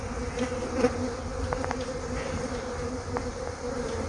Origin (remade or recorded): recorded